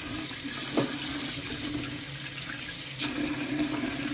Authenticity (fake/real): real